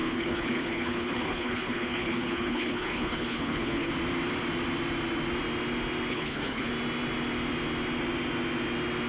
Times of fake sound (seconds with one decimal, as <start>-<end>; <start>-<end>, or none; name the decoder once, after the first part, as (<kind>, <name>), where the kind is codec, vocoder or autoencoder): 0.0-3.9 (codec, HILCodec); 6.1-6.7